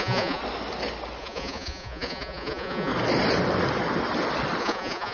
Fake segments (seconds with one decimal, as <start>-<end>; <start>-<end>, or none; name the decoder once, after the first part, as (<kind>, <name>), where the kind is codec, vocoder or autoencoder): 0.0-0.4 (vocoder, Vocos); 1.2-2.9; 4.6-5.1